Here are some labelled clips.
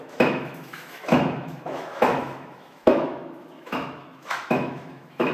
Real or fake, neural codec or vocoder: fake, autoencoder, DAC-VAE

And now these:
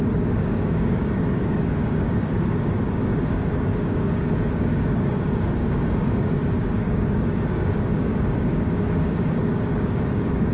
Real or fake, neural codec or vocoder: fake, codec, DAC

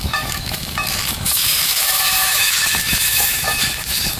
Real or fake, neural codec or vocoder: fake, autoencoder, DAC-VAE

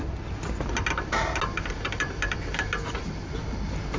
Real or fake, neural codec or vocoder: real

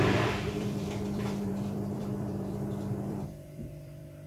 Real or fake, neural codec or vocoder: fake, vocoder, BigVGAN v2